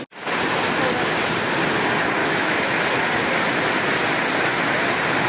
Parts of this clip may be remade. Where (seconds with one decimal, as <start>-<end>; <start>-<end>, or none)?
2.2-2.8